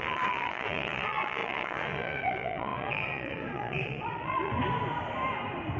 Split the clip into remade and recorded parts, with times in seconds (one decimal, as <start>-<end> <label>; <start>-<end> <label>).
0.0-4.5 remade; 4.5-5.8 recorded